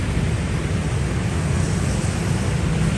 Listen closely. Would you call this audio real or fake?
real